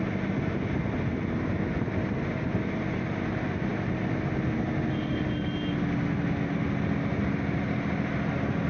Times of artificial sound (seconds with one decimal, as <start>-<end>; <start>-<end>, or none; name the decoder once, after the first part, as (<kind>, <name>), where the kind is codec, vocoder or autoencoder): none